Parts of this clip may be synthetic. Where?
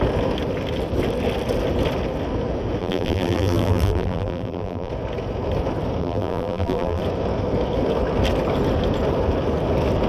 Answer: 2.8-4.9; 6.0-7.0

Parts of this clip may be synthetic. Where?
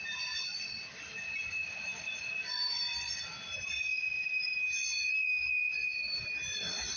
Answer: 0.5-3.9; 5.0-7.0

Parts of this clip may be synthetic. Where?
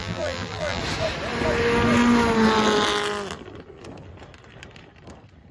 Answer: 0.0-0.8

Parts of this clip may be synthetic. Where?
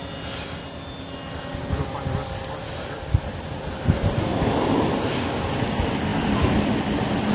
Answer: none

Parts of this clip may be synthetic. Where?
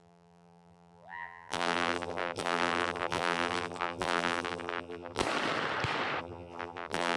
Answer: 0.0-5.2; 6.2-7.2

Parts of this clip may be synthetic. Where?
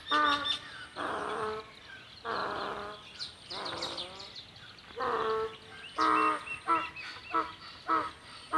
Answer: none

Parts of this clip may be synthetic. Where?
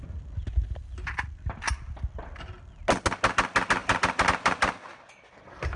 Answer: 3.8-5.1